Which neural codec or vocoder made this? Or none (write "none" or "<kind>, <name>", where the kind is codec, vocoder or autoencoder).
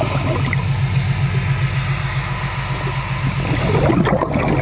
none